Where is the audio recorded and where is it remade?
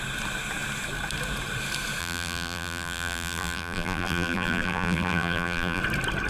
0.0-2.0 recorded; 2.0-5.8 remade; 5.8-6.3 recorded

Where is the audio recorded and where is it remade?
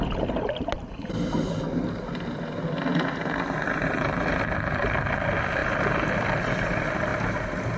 0.0-7.8 recorded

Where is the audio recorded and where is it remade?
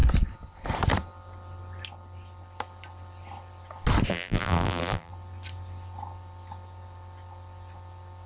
0.0-4.1 recorded; 4.1-5.1 remade; 5.1-8.3 recorded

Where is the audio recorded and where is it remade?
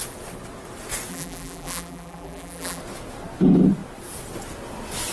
0.0-1.1 recorded; 1.1-2.8 remade; 2.8-5.1 recorded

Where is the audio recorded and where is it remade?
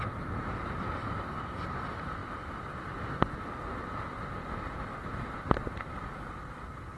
0.0-7.0 recorded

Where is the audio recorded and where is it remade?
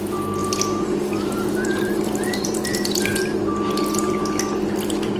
0.0-0.4 recorded; 0.4-3.5 remade; 3.5-5.2 recorded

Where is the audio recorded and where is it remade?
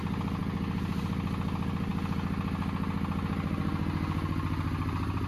0.0-5.3 recorded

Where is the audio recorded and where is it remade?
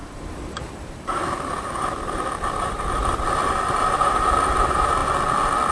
0.0-5.0 remade; 5.0-5.7 recorded